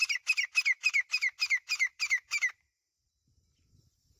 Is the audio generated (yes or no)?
yes